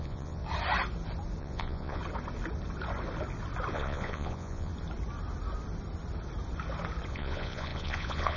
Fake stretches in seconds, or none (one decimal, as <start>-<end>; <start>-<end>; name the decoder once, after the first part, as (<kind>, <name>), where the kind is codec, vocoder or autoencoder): 0.0-0.4 (vocoder, Vocos); 1.4-2.0; 3.7-4.7; 7.1-8.4